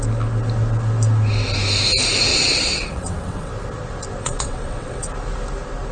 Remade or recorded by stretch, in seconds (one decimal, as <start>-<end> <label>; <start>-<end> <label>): 0.0-2.3 recorded; 2.3-3.5 remade; 3.5-4.2 recorded; 4.2-5.1 remade; 5.1-5.9 recorded